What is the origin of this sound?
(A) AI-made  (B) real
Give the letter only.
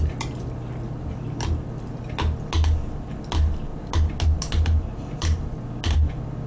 B